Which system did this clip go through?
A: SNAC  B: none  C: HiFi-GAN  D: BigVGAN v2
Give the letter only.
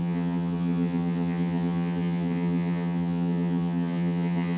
C